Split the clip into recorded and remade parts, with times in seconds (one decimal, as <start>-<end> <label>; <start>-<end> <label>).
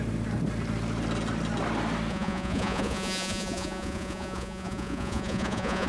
0.0-2.1 recorded; 2.1-5.9 remade